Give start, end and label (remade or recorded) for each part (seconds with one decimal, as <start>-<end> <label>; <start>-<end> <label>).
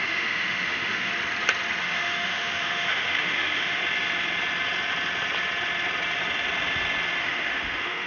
0.0-1.1 remade; 1.1-1.8 recorded; 1.8-3.8 remade; 3.8-7.2 recorded; 7.2-8.1 remade